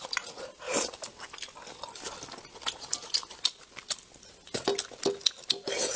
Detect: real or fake real